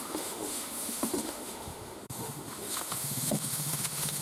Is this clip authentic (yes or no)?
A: no